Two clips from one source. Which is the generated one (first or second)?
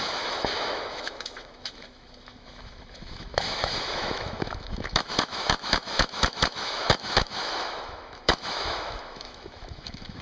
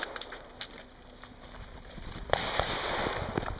first